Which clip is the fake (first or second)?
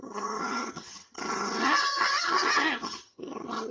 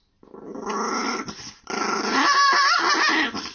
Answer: first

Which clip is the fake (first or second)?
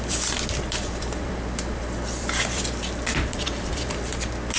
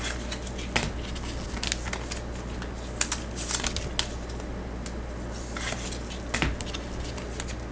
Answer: first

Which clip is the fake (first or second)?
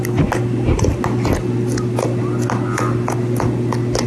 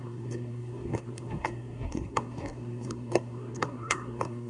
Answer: second